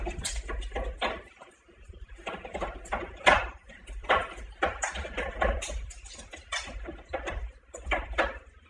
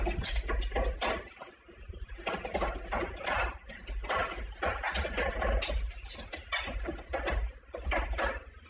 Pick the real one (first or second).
second